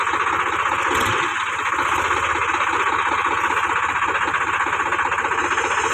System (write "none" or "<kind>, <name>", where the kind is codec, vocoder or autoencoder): none